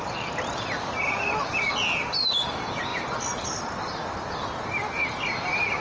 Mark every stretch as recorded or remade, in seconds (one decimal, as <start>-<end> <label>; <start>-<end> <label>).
0.0-5.8 recorded